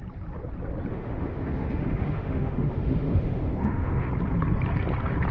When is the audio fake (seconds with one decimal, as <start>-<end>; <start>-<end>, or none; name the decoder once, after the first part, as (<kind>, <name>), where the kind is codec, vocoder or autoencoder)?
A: 0.9-4.1 (autoencoder, DAC-VAE)